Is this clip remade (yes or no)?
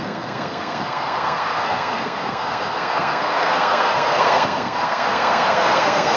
yes